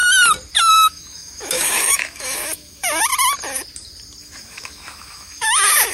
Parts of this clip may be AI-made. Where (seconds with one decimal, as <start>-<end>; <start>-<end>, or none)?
0.7-3.1; 4.2-5.9